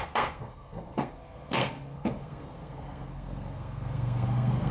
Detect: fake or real fake